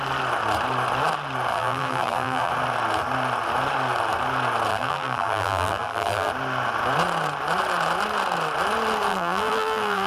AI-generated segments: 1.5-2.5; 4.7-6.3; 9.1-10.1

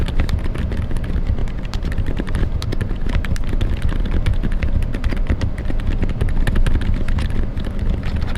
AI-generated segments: 1.4-3.5

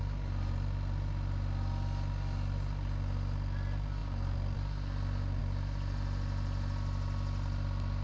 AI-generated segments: 4.0-5.4

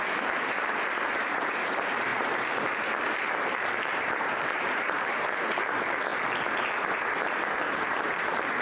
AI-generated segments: 0.0-6.1; 6.9-8.6

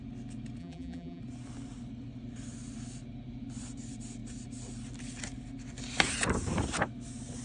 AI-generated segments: 0.6-1.2

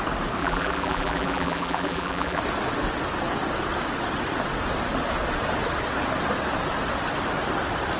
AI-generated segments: 0.4-2.4